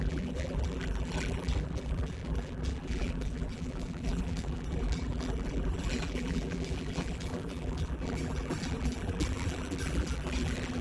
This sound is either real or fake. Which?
fake